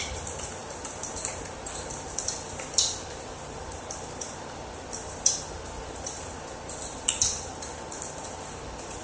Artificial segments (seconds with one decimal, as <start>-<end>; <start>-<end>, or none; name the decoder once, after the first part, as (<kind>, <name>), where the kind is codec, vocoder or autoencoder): 0.0-9.0 (vocoder, BigVGAN v2)